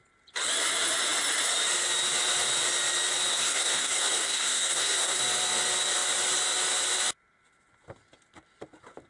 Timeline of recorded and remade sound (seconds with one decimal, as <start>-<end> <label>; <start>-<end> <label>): 0.0-3.3 recorded; 3.3-5.2 remade; 5.2-9.1 recorded